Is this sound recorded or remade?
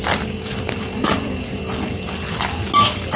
recorded